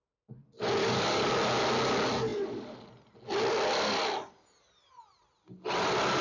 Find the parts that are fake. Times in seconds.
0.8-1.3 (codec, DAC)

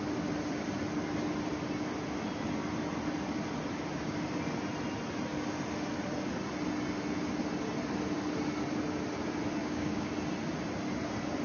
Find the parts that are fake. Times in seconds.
9.6-10.1 (codec, DAC)

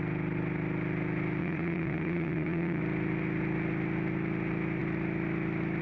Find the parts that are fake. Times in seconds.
1.4-2.8 (vocoder, Vocos)

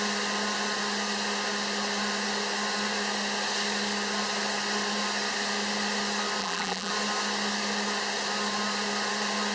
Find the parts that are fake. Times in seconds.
6.4-6.9 (vocoder, BigVGAN v2)